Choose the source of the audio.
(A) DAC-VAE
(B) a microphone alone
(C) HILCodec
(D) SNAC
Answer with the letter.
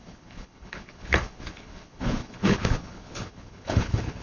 C